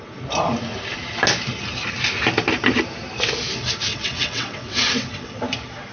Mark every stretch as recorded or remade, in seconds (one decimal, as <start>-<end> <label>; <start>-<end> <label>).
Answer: 0.0-3.9 recorded; 3.9-5.4 remade; 5.4-5.9 recorded